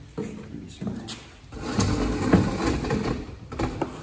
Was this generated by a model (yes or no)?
no